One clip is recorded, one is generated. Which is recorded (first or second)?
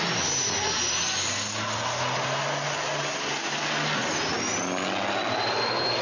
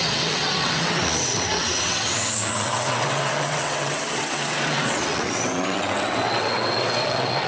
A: first